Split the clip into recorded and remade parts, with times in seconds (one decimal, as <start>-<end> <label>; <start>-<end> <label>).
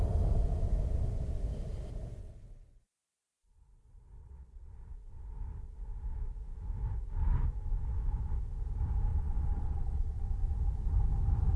0.0-2.2 recorded; 2.2-2.8 remade; 2.8-4.2 recorded; 4.2-4.7 remade; 4.7-9.1 recorded; 9.1-10.3 remade; 10.3-11.6 recorded